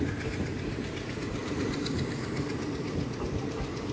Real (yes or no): no